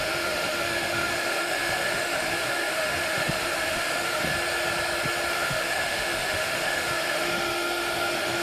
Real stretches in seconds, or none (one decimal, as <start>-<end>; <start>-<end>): 4.3-5.3